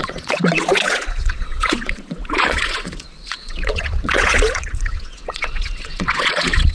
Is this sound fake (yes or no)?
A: yes